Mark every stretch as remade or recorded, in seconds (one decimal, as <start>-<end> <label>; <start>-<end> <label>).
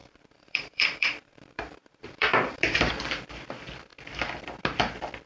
0.0-2.9 remade; 2.9-5.3 recorded